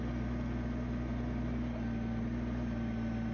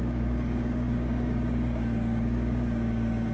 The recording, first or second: first